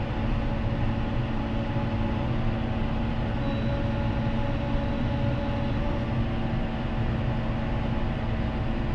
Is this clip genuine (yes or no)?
yes